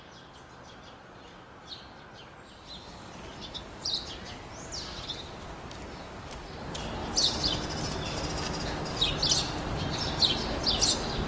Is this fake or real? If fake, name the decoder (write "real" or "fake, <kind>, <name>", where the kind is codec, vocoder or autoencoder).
real